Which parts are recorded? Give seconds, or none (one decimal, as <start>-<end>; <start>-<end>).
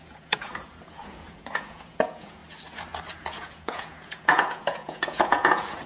2.4-3.1